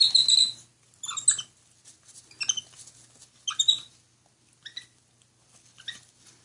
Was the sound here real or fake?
real